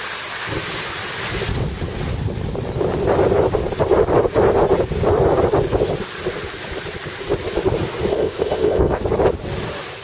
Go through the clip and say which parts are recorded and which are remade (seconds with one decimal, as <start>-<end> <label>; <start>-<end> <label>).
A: 0.0-8.1 recorded; 8.1-9.0 remade; 9.0-10.0 recorded